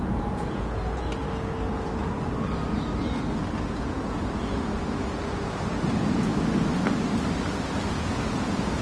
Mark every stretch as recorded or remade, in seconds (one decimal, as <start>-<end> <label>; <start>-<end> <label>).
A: 0.0-1.2 remade; 1.2-3.6 recorded; 3.6-6.3 remade; 6.3-7.9 recorded; 7.9-8.8 remade